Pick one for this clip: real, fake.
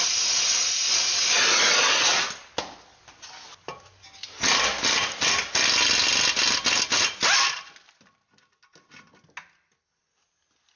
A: real